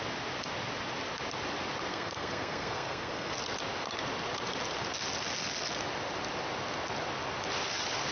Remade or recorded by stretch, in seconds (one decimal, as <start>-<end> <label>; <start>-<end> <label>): 0.0-1.9 recorded; 1.9-3.3 remade; 3.3-8.1 recorded